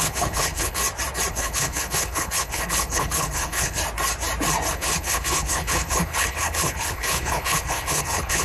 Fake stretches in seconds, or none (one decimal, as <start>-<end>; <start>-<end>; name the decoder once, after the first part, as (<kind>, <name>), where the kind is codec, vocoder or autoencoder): 0.0-0.8 (codec, HILCodec); 1.3-3.8; 4.7-8.4